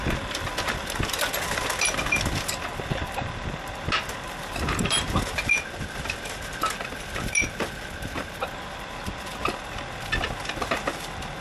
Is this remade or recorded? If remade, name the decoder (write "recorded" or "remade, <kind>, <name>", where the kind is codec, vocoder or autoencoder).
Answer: recorded